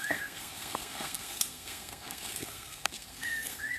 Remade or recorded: remade